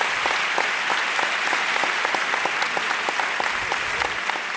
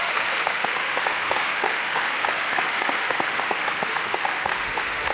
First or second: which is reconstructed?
second